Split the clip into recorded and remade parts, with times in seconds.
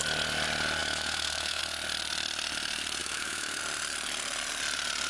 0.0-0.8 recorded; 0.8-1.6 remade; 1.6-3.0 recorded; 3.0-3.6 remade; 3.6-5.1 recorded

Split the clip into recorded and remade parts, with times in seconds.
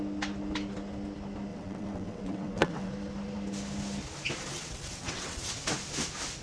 0.0-1.5 recorded; 1.5-2.9 remade; 2.9-4.5 recorded; 4.5-5.5 remade; 5.5-6.4 recorded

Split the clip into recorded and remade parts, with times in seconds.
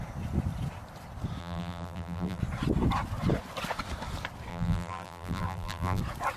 0.0-1.4 recorded; 1.4-2.4 remade; 2.4-4.5 recorded; 4.5-6.0 remade; 6.0-6.4 recorded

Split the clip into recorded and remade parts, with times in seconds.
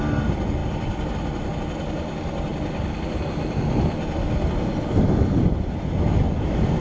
0.0-6.8 recorded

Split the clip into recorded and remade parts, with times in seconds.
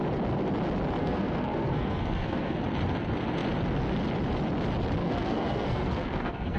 0.0-1.0 recorded; 1.0-2.6 remade; 2.6-5.0 recorded; 5.0-6.6 remade